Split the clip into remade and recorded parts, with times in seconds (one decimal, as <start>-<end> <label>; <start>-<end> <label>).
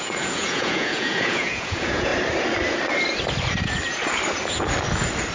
0.0-2.1 remade; 2.1-5.3 recorded